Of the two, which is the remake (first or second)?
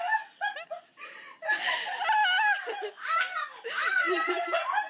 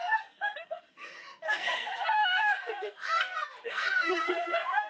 second